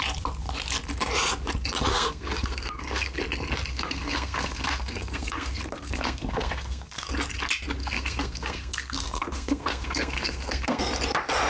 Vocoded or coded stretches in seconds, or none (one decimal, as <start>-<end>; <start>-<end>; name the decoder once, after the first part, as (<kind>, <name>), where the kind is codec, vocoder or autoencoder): 1.9-3.2 (codec, SNAC); 3.7-7.1; 7.8-10.8